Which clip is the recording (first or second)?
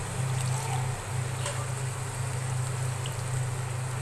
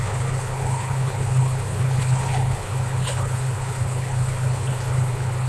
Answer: first